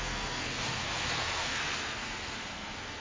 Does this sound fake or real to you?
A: fake